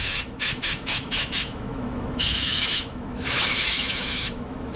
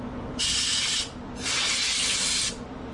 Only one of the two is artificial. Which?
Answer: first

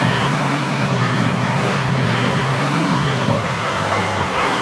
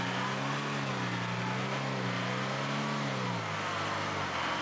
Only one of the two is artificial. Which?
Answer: first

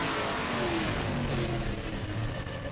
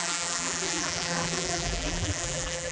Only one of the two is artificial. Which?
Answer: second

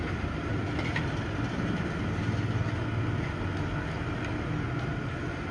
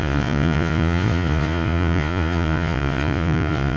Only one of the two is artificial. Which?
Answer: second